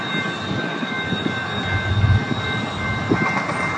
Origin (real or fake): real